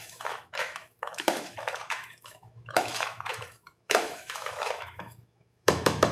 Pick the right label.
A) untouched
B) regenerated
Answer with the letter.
B